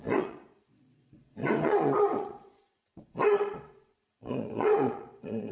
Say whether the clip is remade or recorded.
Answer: remade